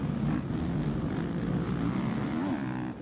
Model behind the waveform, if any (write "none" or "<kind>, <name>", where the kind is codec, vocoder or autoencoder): none